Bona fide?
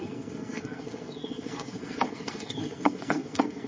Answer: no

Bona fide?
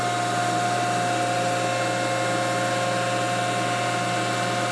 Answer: yes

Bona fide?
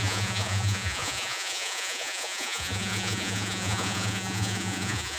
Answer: no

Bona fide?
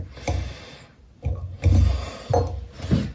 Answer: yes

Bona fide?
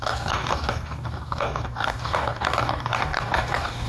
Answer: no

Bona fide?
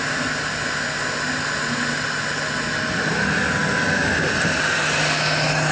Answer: yes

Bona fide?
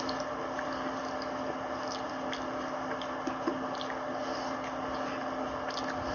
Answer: yes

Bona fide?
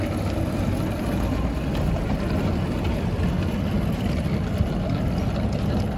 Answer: yes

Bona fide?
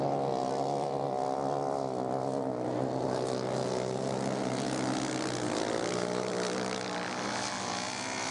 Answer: yes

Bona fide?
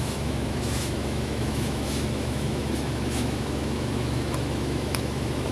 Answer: no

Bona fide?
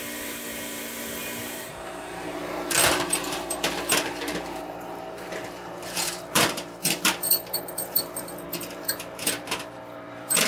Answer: no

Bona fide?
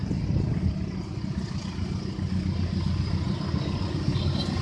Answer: yes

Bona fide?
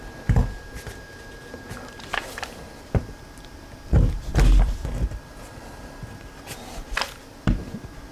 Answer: no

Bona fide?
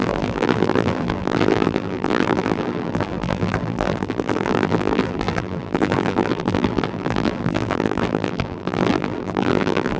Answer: no